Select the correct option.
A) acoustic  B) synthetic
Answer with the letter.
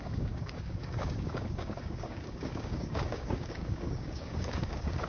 B